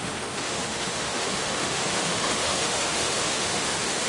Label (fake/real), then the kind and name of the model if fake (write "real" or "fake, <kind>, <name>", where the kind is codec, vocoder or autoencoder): fake, autoencoder, DAC-VAE